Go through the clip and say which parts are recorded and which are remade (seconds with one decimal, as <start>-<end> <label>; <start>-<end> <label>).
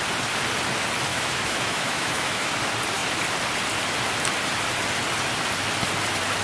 0.0-1.1 recorded; 1.1-2.5 remade; 2.5-6.4 recorded